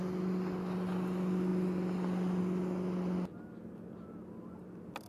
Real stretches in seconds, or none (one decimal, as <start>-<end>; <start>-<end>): 0.0-5.1